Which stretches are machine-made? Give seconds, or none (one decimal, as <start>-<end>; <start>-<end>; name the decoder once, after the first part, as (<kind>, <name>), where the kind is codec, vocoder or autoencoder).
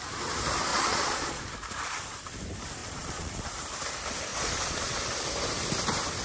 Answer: 0.7-1.4 (vocoder, Vocos); 2.8-3.5; 4.3-5.0